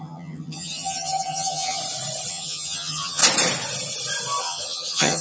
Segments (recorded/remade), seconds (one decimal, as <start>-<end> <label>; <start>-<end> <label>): 0.0-1.8 remade; 1.8-2.3 recorded; 2.3-3.2 remade; 3.2-4.4 recorded; 4.4-5.2 remade